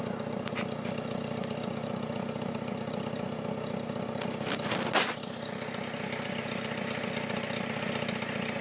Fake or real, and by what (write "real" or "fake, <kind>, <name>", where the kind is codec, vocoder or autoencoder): real